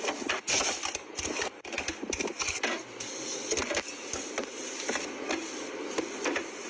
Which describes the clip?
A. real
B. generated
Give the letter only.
A